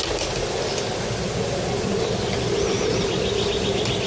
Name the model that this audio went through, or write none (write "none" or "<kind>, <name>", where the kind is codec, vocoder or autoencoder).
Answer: none